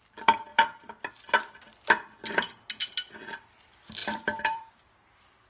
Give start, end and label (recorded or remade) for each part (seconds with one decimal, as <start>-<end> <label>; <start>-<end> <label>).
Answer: 0.0-4.0 recorded; 4.0-4.7 remade; 4.7-5.5 recorded